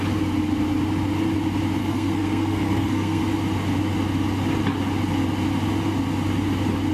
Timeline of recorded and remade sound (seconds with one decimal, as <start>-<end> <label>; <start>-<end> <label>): 0.0-1.8 recorded; 1.8-3.2 remade; 3.2-6.9 recorded